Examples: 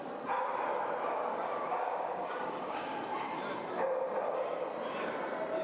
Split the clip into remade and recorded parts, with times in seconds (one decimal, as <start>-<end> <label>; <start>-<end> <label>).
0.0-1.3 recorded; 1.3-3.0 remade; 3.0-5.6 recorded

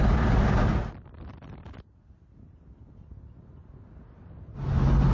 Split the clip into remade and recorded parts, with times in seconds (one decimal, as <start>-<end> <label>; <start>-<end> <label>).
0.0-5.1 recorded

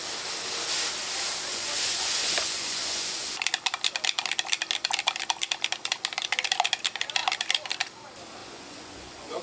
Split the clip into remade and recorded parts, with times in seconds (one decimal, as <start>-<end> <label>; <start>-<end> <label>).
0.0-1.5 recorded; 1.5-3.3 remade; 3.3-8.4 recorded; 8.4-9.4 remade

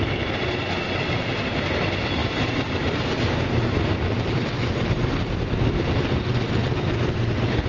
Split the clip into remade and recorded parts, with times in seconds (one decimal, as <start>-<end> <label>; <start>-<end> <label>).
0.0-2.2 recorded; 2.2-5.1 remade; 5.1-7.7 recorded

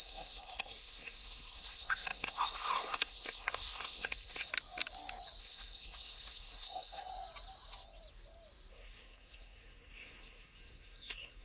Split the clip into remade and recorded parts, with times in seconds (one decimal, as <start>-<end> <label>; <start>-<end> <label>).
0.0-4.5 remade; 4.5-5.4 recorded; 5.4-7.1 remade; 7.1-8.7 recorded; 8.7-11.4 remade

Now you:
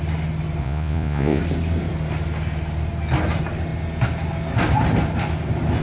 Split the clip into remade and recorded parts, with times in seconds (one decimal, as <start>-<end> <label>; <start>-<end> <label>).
0.0-0.6 recorded; 0.6-1.4 remade; 1.4-5.8 recorded

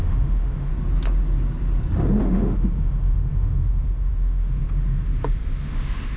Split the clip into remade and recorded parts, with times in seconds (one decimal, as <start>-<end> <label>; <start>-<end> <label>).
0.0-0.7 remade; 0.7-2.2 recorded; 2.2-6.2 remade

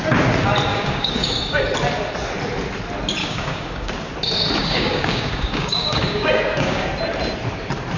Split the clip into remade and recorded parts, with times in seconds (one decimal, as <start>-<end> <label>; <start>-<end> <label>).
0.0-0.7 recorded; 0.7-1.6 remade; 1.6-3.2 recorded; 3.2-3.9 remade; 3.9-4.6 recorded; 4.6-6.9 remade; 6.9-8.0 recorded